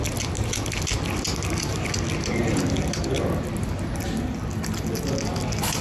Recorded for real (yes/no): yes